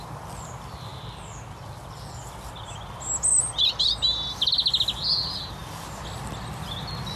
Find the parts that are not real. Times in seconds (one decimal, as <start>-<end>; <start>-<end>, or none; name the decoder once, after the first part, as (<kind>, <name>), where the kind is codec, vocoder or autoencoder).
none